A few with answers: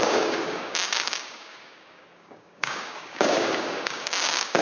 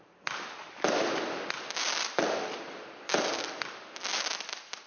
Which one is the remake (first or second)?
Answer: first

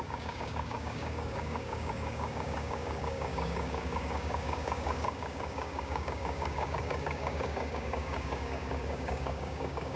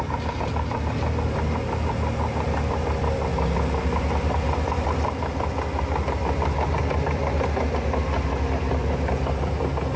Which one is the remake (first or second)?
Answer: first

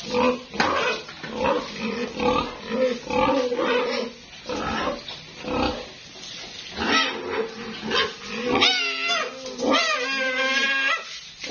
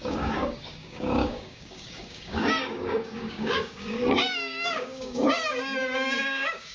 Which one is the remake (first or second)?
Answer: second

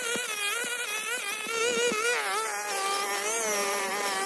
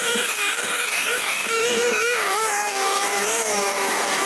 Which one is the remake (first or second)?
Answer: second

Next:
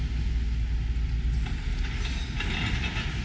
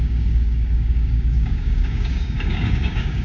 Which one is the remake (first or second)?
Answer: second